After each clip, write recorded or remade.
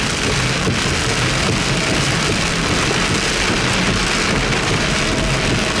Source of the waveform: recorded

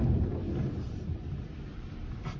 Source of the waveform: recorded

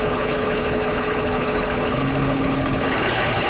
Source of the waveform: remade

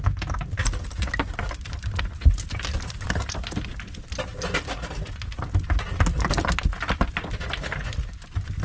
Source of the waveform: recorded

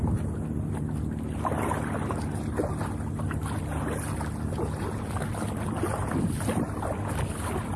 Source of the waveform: recorded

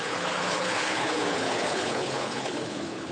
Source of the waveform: remade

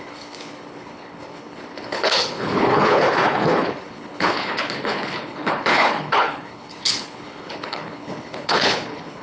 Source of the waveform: remade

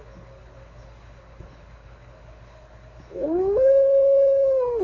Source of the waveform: remade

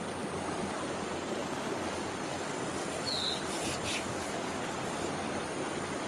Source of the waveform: recorded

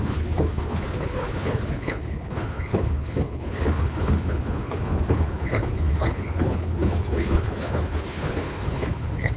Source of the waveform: remade